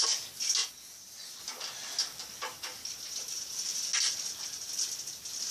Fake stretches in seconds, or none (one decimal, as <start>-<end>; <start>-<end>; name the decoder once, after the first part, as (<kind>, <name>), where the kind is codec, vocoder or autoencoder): none